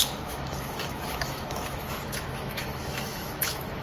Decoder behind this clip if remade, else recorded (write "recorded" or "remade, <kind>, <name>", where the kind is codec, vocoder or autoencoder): remade, autoencoder, DAC-VAE